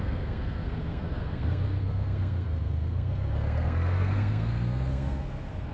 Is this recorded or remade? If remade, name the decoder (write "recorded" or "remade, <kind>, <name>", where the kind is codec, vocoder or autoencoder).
remade, codec, SNAC